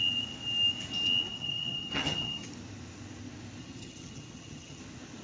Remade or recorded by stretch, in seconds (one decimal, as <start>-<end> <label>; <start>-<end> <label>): 0.0-1.3 recorded; 1.3-2.5 remade; 2.5-3.6 recorded; 3.6-4.8 remade; 4.8-5.2 recorded